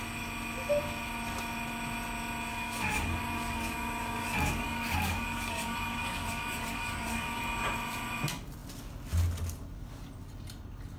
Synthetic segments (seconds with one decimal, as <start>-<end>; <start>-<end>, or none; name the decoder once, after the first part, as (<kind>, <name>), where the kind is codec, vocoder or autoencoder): 2.5-7.4 (codec, DAC)